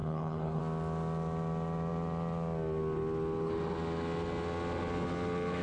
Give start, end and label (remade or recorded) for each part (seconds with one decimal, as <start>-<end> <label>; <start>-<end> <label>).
0.0-0.6 remade; 0.6-5.6 recorded